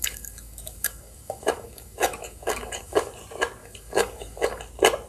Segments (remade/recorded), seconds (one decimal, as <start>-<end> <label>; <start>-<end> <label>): 0.0-3.1 remade; 3.1-3.6 recorded; 3.6-4.6 remade; 4.6-5.1 recorded